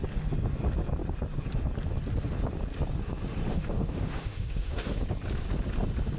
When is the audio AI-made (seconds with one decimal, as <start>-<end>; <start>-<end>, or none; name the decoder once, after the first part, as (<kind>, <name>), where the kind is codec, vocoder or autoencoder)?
3.5-5.0 (autoencoder, DAC-VAE)